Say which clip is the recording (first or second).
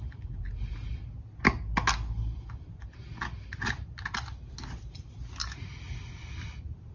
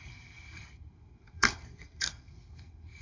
first